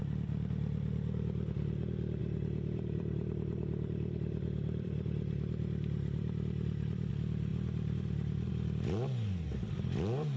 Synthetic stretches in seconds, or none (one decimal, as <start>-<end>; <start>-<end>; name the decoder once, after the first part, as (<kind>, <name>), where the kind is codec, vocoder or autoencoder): 2.2-7.1 (vocoder, BigVGAN v2); 7.5-8.5